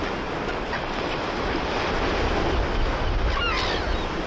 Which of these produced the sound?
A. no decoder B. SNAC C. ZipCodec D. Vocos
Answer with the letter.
A